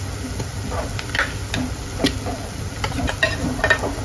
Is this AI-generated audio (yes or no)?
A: no